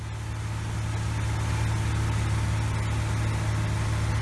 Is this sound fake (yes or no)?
no